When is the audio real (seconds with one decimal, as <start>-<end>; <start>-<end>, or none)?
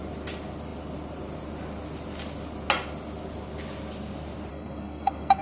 0.0-4.5